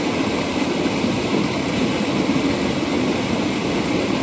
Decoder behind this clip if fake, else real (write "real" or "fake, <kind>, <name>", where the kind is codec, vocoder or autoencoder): real